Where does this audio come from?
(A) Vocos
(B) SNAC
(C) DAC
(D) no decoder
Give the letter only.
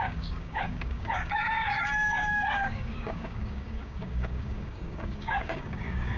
C